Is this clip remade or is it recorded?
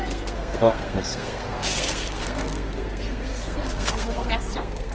remade